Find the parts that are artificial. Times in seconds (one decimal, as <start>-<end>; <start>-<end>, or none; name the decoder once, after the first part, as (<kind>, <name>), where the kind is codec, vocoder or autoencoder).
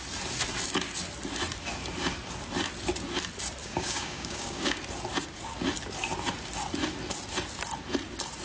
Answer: 3.6-4.8 (codec, DAC)